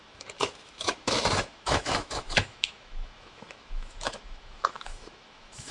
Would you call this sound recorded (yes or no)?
no